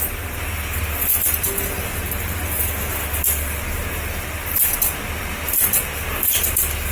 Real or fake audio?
real